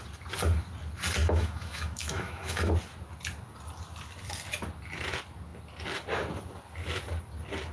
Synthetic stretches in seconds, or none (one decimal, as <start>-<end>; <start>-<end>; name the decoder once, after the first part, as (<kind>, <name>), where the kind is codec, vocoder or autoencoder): 1.2-2.7 (autoencoder, DAC-VAE)